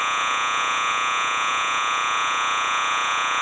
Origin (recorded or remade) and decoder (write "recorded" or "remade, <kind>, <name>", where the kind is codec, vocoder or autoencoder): remade, vocoder, Vocos